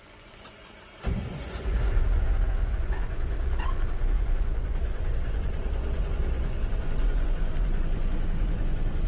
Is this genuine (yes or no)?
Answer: no